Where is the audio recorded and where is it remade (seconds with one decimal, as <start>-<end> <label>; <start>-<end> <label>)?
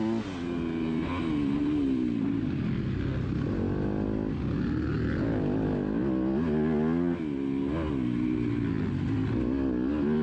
0.0-10.2 recorded